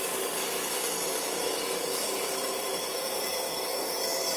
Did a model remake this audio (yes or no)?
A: yes